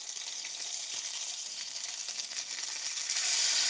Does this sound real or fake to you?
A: real